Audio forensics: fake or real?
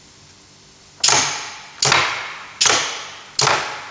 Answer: real